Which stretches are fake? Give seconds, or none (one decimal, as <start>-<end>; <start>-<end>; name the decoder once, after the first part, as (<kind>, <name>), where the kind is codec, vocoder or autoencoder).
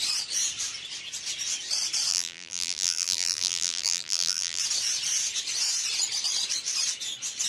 2.1-4.6 (vocoder, BigVGAN v2)